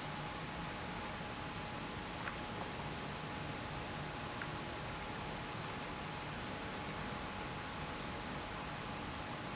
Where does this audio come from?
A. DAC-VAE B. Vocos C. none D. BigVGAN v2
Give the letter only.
C